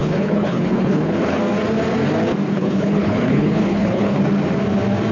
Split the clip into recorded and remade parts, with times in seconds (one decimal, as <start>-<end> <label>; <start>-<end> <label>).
0.0-1.4 remade; 1.4-2.5 recorded; 2.5-4.2 remade; 4.2-5.1 recorded